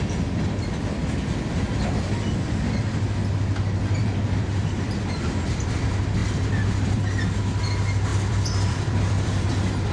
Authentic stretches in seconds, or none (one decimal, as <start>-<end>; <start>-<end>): 0.0-4.0; 5.0-6.2; 7.0-8.1; 9.5-9.9